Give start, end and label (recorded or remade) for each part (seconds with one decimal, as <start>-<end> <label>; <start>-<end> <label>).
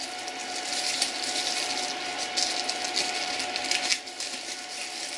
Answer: 0.0-5.2 recorded